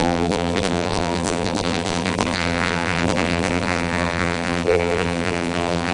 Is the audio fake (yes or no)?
yes